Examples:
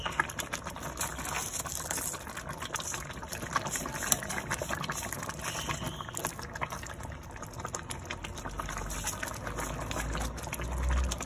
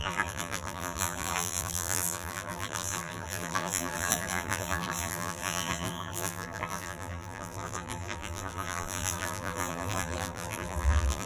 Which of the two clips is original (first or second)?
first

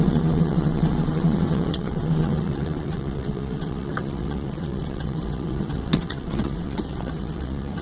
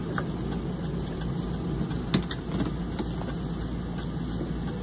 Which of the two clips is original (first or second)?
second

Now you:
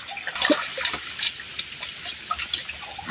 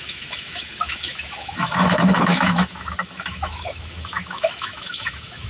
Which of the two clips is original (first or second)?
first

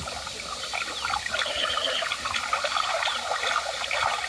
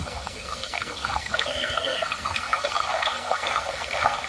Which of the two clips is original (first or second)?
first